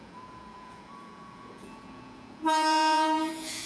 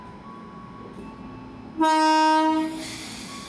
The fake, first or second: first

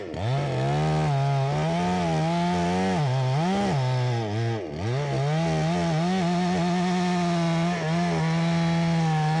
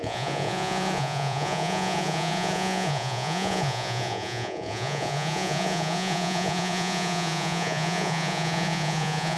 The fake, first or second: second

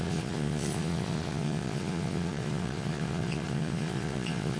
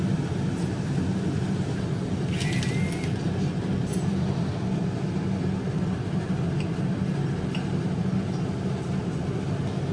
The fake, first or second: first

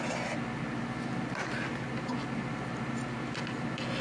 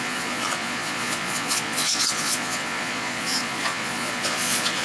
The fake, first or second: second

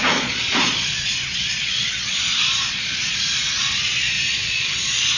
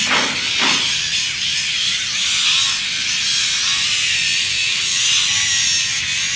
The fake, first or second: first